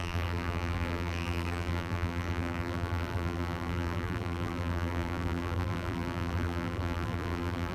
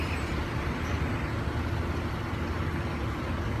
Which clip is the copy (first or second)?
first